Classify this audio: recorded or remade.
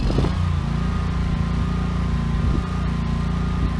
recorded